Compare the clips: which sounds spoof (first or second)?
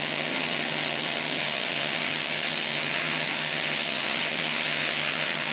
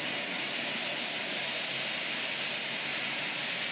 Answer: first